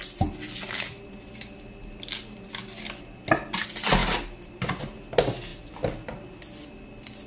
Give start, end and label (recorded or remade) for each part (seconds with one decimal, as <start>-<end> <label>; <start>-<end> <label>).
0.0-7.3 recorded